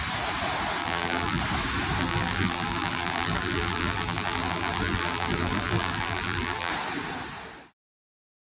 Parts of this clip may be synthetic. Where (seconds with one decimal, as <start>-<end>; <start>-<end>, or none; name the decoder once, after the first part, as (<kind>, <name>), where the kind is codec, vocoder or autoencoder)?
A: 0.8-1.4 (vocoder, BigVGAN v2); 2.0-6.7